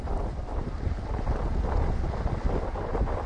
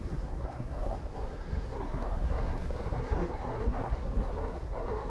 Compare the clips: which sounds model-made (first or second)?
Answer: second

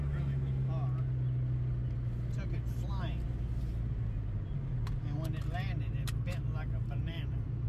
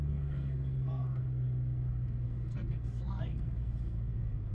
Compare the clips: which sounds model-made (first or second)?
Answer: second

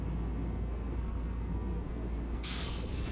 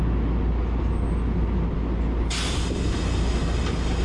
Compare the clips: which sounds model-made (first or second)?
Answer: first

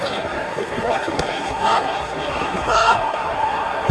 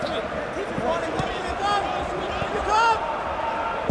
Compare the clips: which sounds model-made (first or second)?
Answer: first